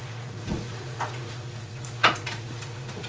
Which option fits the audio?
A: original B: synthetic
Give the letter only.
B